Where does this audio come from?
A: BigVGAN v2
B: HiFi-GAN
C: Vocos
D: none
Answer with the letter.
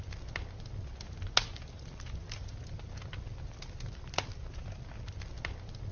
D